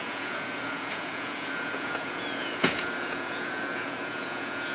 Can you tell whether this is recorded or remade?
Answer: remade